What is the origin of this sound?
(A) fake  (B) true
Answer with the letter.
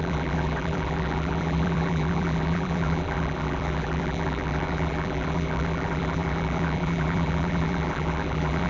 A